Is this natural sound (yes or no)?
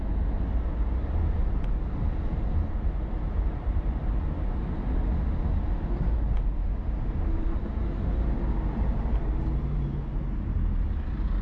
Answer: yes